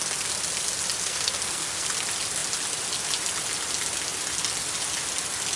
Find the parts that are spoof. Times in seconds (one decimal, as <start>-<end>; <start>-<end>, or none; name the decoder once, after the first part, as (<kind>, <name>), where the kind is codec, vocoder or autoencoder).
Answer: 1.0-1.9 (codec, SNAC)